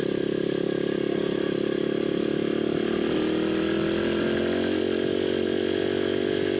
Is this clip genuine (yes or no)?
yes